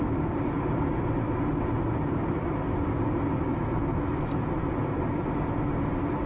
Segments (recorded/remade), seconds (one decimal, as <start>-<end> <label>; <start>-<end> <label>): 0.0-3.5 recorded; 3.5-4.3 remade; 4.3-6.3 recorded